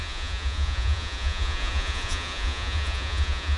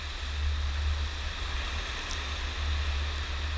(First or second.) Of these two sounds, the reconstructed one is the first